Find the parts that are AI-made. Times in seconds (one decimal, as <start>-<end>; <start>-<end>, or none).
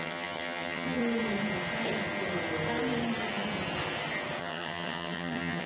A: 0.0-1.0; 4.4-5.7